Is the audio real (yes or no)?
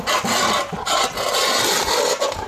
yes